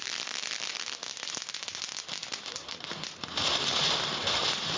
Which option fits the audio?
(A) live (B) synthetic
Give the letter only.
A